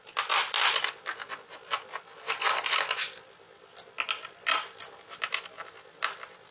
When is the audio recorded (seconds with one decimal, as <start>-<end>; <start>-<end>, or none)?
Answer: 0.0-6.5

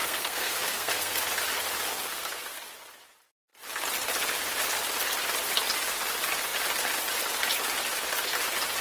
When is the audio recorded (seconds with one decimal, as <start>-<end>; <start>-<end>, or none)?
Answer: 1.2-1.9; 2.7-8.8

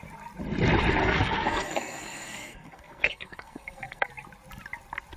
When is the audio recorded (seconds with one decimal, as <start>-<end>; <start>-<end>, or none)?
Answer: 0.0-1.0; 4.1-5.2

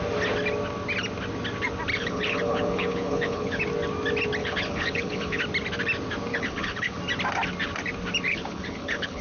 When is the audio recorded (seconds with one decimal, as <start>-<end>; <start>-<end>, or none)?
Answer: 0.0-1.9; 3.6-4.4; 5.4-6.3; 7.0-8.3

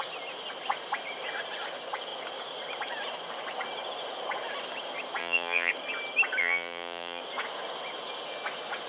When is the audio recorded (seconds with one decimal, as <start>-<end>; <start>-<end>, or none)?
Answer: 0.0-5.2; 5.7-6.4; 7.2-8.9

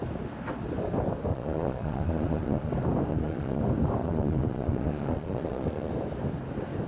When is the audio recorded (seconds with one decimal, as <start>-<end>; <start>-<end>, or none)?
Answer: 0.0-1.3; 2.7-3.1; 3.6-4.0; 5.9-6.9

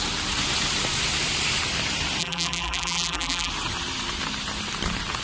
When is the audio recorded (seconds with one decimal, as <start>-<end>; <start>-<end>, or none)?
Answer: 0.0-2.2; 3.5-5.2

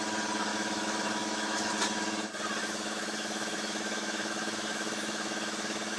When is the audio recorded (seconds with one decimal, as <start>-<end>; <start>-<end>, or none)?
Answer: 0.0-0.5; 1.7-2.6